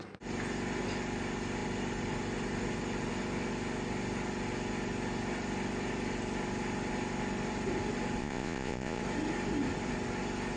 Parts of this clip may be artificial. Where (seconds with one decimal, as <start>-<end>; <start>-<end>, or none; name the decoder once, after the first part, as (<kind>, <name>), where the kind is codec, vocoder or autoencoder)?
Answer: 8.2-9.0 (vocoder, Vocos)